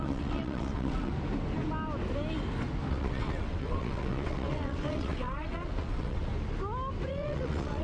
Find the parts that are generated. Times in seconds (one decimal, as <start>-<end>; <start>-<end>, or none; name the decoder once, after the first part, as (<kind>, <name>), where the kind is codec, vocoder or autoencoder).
0.0-1.1 (vocoder, WaveNeXt); 2.9-6.3; 7.1-7.8